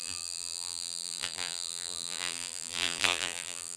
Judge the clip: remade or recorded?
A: remade